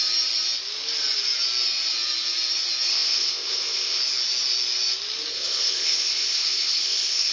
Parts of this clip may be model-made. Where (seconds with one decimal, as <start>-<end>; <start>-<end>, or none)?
2.9-4.0; 5.3-7.3